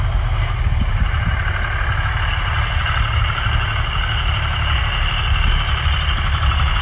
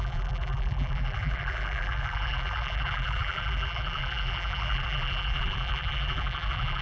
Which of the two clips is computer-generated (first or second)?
second